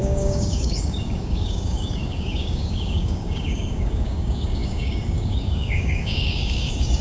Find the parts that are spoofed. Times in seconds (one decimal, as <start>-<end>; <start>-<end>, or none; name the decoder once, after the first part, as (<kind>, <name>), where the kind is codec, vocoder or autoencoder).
0.0-7.0 (codec, DAC)